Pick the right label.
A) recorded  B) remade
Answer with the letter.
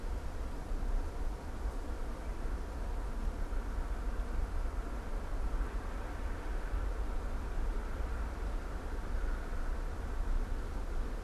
A